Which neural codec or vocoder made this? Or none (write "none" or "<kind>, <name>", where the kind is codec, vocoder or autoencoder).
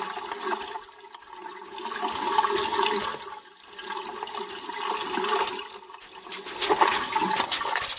none